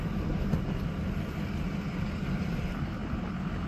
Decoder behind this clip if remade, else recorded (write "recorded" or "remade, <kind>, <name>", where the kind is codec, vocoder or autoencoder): recorded